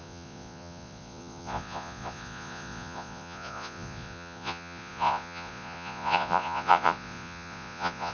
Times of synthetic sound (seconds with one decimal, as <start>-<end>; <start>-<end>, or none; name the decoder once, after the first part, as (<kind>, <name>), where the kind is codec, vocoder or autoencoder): 0.0-8.1 (vocoder, Vocos)